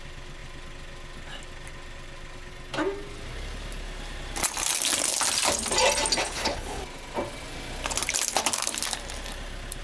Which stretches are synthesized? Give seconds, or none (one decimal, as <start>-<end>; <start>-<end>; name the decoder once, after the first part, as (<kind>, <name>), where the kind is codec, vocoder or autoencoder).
6.2-6.8 (codec, HILCodec)